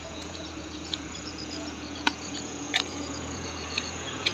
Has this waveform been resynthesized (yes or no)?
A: yes